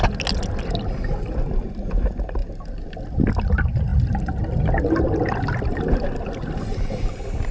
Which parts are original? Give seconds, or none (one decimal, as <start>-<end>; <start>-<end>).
0.0-7.5